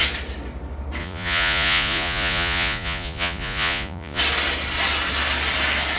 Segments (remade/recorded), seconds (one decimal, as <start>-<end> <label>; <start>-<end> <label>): 0.0-1.0 recorded; 1.0-4.2 remade; 4.2-6.0 recorded